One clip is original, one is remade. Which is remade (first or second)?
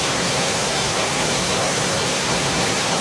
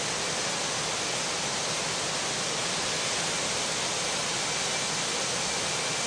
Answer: first